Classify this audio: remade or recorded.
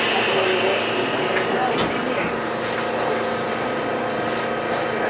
recorded